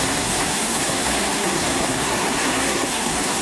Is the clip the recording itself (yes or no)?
no